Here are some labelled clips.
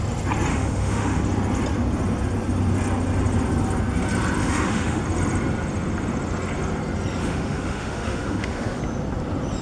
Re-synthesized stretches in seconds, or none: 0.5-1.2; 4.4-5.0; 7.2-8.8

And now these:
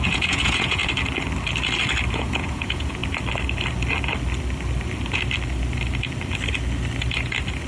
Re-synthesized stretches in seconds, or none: 0.0-0.8; 2.1-3.0

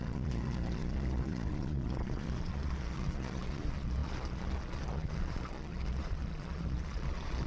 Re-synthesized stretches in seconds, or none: 0.0-7.5

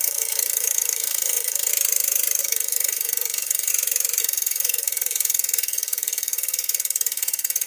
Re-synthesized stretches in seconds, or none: 0.0-1.7; 2.4-3.7; 4.2-7.7